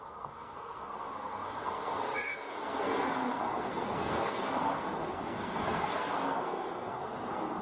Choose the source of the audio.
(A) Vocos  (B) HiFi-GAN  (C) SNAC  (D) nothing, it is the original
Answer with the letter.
C